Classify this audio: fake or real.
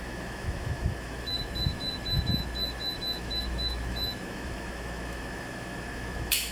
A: fake